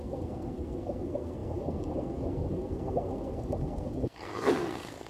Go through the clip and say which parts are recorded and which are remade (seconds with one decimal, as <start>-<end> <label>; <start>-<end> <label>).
0.0-5.1 remade